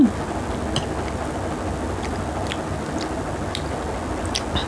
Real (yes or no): yes